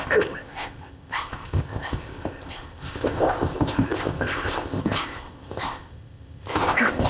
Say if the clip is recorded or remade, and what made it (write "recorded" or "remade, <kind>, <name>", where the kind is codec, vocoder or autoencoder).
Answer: remade, codec, ZipCodec